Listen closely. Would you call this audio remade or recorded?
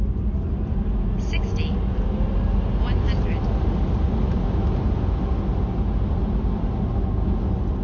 recorded